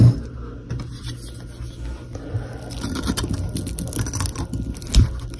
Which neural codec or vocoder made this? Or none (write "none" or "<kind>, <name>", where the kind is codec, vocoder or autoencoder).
none